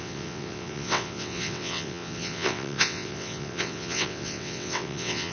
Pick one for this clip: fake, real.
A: fake